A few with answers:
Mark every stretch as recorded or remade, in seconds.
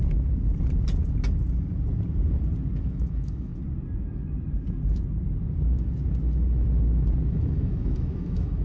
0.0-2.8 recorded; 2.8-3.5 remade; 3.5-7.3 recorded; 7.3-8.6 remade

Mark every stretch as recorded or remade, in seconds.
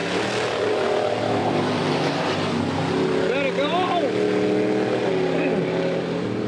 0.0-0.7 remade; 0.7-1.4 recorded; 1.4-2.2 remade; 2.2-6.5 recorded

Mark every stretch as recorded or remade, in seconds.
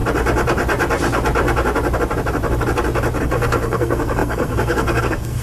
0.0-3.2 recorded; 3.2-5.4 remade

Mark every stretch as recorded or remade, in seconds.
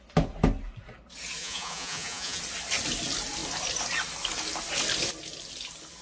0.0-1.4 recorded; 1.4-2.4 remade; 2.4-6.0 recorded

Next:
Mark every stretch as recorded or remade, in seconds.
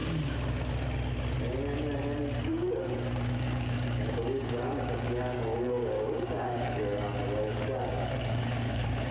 0.0-2.5 recorded; 2.5-6.8 remade; 6.8-7.4 recorded; 7.4-9.1 remade